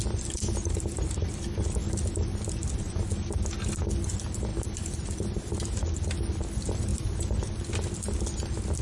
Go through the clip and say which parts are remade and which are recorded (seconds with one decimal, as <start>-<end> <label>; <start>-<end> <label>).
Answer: 0.0-0.6 recorded; 0.6-1.1 remade; 1.1-4.5 recorded; 4.5-5.5 remade; 5.5-6.9 recorded; 6.9-7.4 remade; 7.4-8.8 recorded